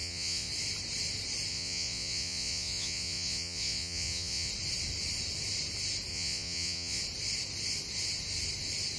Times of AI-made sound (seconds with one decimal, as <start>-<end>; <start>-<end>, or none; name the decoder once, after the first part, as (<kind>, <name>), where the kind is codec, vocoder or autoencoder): 0.0-0.5 (vocoder, Vocos); 1.5-4.5; 6.1-7.0